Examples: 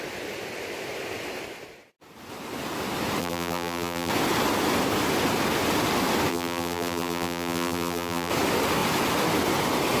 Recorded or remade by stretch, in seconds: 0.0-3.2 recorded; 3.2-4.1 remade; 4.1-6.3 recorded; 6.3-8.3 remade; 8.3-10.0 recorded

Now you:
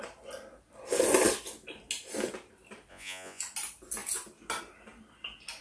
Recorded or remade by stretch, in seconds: 0.0-2.9 recorded; 2.9-3.4 remade; 3.4-5.6 recorded

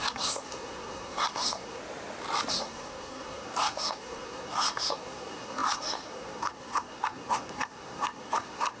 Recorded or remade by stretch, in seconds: 0.0-1.8 remade; 1.8-2.5 recorded; 2.5-8.8 remade